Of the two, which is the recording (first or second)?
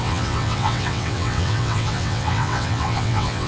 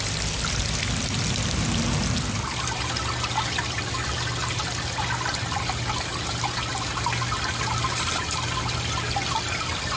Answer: second